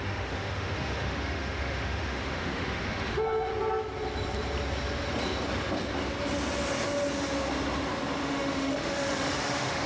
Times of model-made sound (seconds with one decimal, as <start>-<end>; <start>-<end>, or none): 0.0-3.5; 8.2-9.9